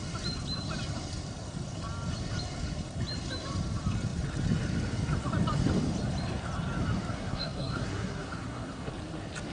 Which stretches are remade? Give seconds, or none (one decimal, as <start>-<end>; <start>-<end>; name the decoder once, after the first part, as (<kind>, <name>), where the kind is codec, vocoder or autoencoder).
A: 7.1-8.9 (codec, SNAC)